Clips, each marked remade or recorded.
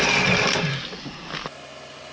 recorded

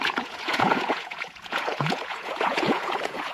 remade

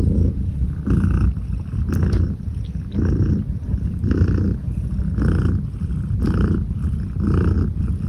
recorded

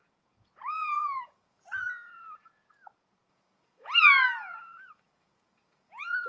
remade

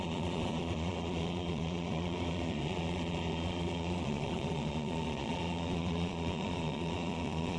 remade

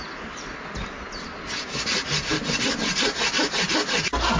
recorded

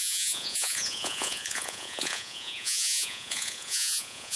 remade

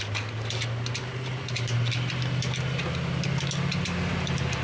recorded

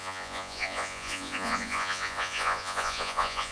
remade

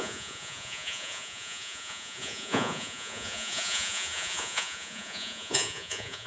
remade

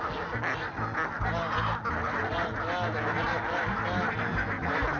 recorded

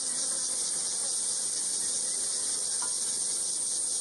recorded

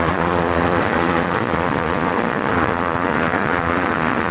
remade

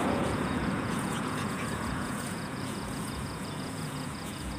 remade